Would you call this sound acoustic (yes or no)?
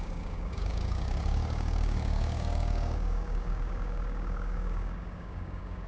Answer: no